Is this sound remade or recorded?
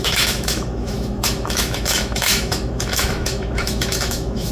remade